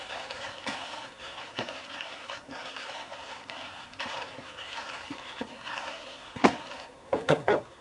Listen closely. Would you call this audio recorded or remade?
remade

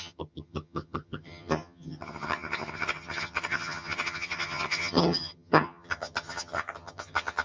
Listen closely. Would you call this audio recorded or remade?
remade